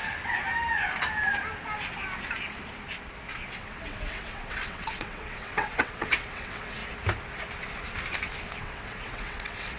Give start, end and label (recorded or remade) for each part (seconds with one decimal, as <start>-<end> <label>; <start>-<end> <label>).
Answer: 0.0-3.5 recorded; 3.5-6.8 remade; 6.8-8.6 recorded; 8.6-9.8 remade